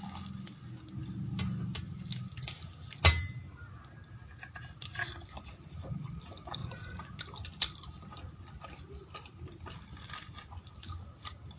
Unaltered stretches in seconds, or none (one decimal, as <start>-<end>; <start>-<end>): 0.0-6.6; 7.2-11.6